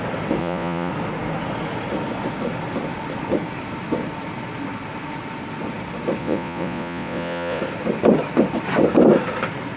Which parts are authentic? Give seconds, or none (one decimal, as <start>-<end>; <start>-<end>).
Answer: 0.0-0.4; 0.9-6.2; 7.6-9.8